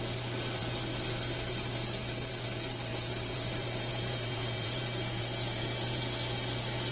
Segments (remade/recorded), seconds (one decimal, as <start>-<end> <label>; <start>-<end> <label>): 0.0-2.9 recorded; 2.9-6.0 remade; 6.0-6.9 recorded